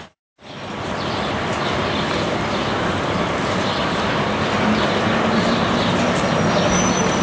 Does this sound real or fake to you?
real